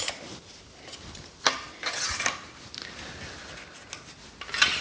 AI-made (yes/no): no